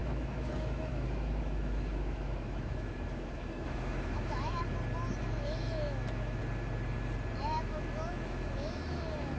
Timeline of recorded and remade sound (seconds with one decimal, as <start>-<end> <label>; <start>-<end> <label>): 0.0-4.6 remade; 4.6-5.2 recorded; 5.2-6.4 remade; 6.4-7.4 recorded; 7.4-9.4 remade